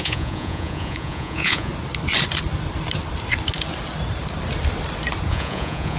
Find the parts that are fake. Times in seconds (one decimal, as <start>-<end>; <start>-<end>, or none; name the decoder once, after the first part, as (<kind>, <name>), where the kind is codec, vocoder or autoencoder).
0.0-1.7 (vocoder, Vocos); 5.3-6.0